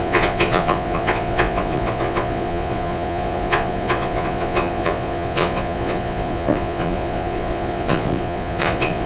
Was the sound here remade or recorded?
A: remade